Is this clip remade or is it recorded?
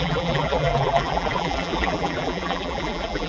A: remade